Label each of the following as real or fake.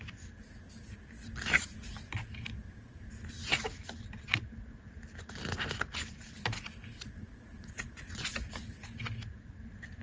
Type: real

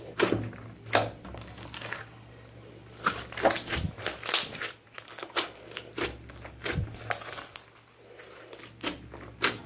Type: real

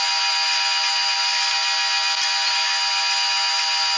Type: real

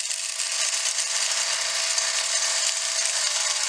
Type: real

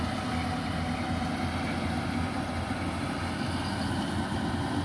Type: real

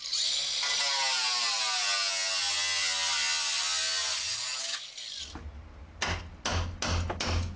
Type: real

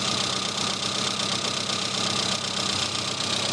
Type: real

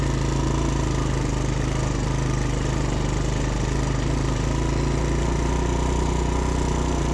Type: real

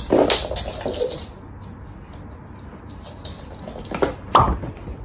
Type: real